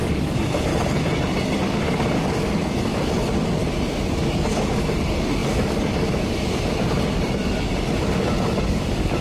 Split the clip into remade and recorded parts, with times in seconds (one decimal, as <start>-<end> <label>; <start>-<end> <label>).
0.0-0.7 remade; 0.7-1.6 recorded; 1.6-3.6 remade; 3.6-4.1 recorded; 4.1-9.2 remade